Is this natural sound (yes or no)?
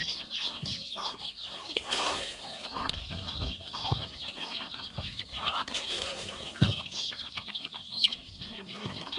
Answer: no